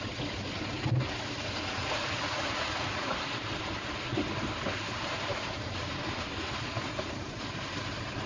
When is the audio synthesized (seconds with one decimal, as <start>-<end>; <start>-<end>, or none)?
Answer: 1.8-3.1